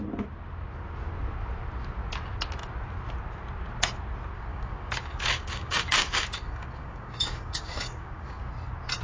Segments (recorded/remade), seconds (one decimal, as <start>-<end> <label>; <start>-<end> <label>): 0.0-4.5 recorded; 4.5-8.5 remade; 8.5-9.0 recorded